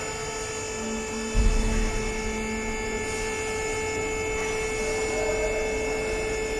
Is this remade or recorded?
recorded